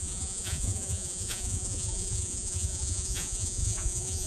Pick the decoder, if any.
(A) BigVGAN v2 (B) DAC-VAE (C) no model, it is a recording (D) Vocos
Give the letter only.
D